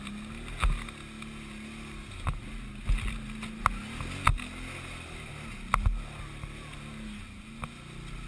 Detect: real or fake real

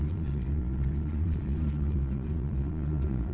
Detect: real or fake fake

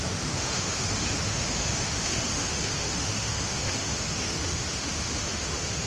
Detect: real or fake fake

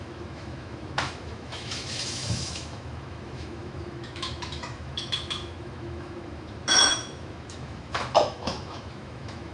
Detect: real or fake fake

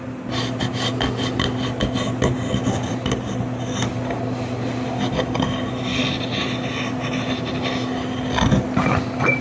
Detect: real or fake fake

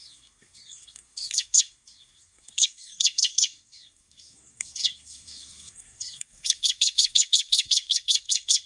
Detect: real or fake fake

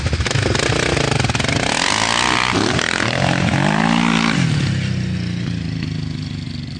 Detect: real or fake real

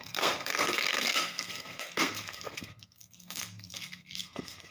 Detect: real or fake fake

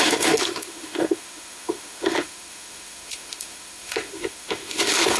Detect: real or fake fake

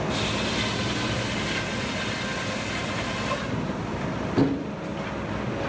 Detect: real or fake real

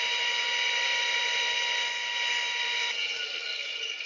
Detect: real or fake real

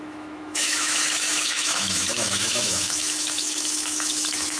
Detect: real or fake fake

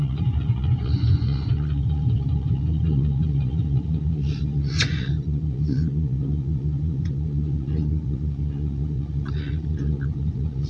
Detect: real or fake fake